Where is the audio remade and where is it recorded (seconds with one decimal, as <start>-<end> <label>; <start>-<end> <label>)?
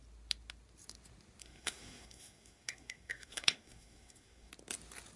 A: 0.0-1.4 recorded; 1.4-4.5 remade; 4.5-5.2 recorded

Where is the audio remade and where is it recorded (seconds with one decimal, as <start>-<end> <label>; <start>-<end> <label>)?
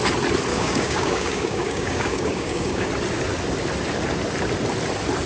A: 0.0-0.5 recorded; 0.5-2.9 remade; 2.9-5.3 recorded